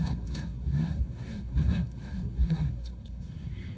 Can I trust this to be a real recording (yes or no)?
no